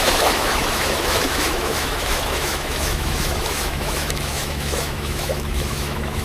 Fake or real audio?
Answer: fake